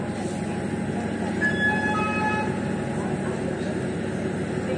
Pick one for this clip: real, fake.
real